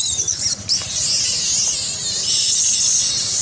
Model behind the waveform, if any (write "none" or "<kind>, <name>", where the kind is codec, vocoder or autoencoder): none